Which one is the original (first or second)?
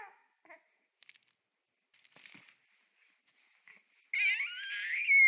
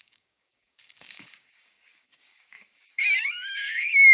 first